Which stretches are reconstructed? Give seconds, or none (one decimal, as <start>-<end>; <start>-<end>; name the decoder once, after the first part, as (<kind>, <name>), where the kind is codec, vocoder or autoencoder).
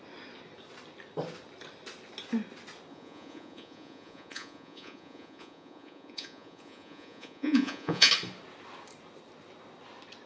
2.9-8.1 (vocoder, Vocos)